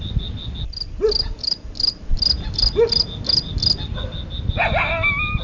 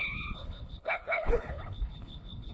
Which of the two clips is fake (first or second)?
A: second